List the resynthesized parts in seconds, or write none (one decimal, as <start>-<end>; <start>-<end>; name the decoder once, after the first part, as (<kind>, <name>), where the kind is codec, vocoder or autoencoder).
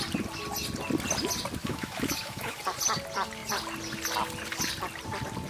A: 1.6-2.6 (autoencoder, DAC-VAE)